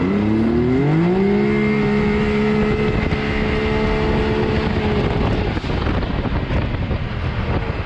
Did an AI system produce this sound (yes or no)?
no